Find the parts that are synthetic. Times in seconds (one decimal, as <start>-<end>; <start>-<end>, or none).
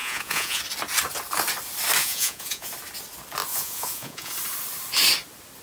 0.0-0.6; 2.0-2.7; 3.5-4.3